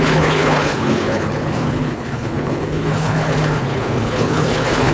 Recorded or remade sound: remade